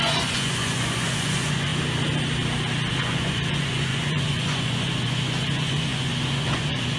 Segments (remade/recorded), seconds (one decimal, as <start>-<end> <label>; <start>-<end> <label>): 0.0-1.7 remade; 1.7-2.9 recorded; 2.9-7.0 remade